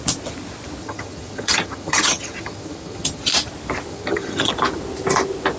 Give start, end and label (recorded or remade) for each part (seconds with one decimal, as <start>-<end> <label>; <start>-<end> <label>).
0.0-0.8 recorded; 0.8-3.2 remade; 3.2-3.9 recorded; 3.9-4.5 remade; 4.5-5.6 recorded